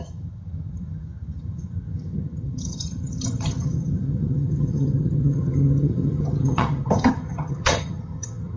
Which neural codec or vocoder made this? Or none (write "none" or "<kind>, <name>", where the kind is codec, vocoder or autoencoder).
vocoder, HiFi-GAN